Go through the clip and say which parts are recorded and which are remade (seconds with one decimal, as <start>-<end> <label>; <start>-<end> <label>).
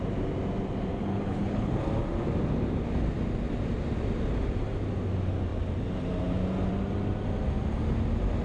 0.0-0.9 recorded; 0.9-1.8 remade; 1.8-8.4 recorded